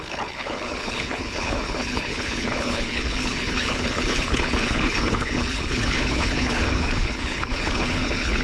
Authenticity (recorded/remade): remade